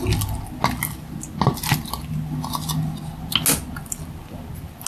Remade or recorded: recorded